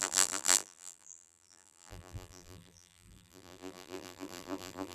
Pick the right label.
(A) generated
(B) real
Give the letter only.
A